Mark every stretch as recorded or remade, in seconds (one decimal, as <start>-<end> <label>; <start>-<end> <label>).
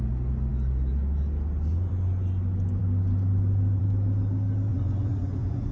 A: 0.0-4.7 recorded; 4.7-5.7 remade